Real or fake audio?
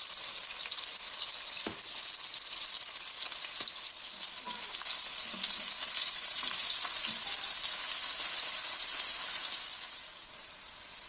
real